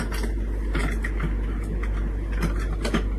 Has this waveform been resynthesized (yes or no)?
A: no